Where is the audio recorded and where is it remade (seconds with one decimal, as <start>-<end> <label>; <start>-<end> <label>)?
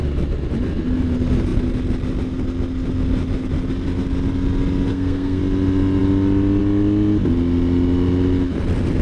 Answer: 0.0-4.9 recorded; 4.9-5.4 remade; 5.4-9.0 recorded